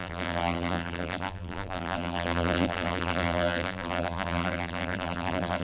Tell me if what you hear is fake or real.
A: fake